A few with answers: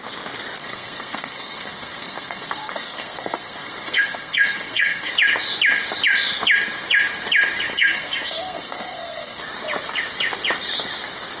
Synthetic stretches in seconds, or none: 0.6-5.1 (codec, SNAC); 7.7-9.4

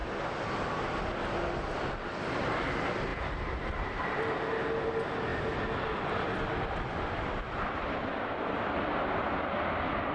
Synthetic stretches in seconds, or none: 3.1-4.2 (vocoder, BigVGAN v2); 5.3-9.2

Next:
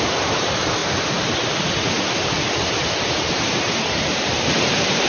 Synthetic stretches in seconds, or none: 0.0-0.8 (vocoder, BigVGAN v2); 3.0-5.1

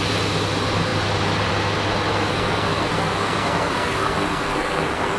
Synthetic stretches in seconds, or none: 2.1-5.2 (codec, SNAC)